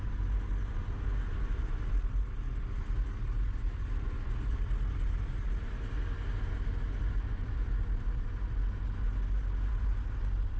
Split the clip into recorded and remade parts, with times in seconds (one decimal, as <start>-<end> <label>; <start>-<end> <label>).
0.0-10.6 recorded